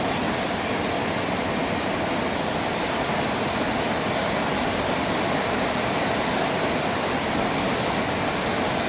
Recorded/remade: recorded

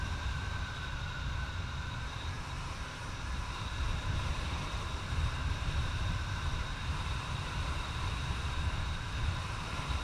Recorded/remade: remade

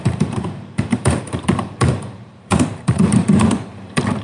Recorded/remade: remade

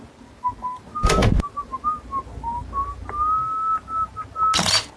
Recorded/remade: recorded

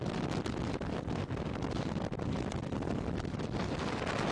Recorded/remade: recorded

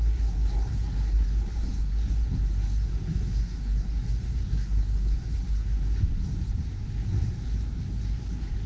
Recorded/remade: remade